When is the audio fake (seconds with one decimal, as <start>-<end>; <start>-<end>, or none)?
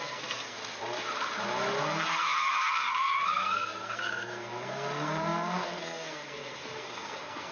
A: 0.0-0.6; 1.8-7.5